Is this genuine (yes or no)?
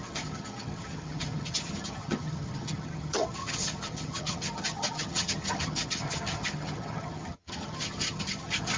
no